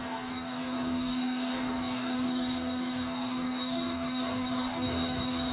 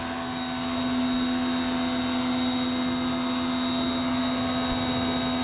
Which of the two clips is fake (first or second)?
first